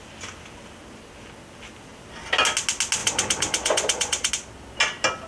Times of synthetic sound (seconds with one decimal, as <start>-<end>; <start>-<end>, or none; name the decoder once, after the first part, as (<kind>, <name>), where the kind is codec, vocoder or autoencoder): 3.0-4.3 (vocoder, Vocos)

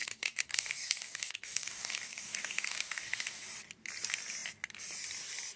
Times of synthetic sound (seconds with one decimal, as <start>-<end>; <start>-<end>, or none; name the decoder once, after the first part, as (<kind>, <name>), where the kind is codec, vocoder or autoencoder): 0.0-3.4 (codec, DAC)

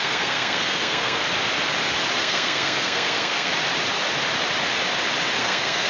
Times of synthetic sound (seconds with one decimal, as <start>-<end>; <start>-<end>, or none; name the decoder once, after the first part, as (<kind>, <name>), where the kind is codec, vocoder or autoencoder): 0.0-1.2 (codec, SNAC); 2.2-3.5; 5.4-5.9

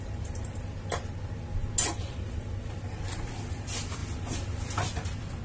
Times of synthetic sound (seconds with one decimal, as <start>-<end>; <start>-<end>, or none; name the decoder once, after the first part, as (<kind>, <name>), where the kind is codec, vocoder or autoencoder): 0.0-1.6 (vocoder, BigVGAN v2); 2.1-4.0; 4.8-5.4

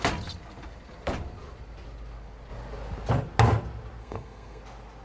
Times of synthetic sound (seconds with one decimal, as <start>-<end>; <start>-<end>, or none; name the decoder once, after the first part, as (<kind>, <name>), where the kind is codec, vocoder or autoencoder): 4.0-4.6 (codec, SNAC)

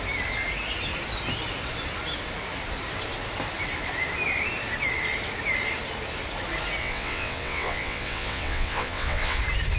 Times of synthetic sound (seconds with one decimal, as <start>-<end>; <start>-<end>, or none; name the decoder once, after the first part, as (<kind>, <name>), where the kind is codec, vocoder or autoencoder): 6.8-9.4 (vocoder, WaveNeXt)

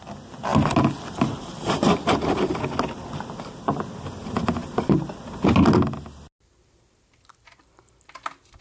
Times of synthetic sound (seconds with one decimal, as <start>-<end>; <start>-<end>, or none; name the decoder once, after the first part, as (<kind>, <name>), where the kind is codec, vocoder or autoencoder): none

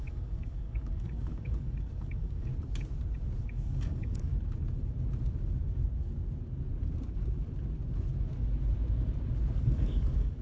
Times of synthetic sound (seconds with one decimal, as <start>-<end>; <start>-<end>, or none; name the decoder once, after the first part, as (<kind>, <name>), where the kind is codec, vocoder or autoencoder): 0.0-2.5 (codec, DAC); 3.4-4.3; 9.6-10.4